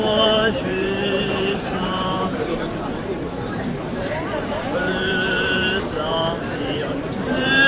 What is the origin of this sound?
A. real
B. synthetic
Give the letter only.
B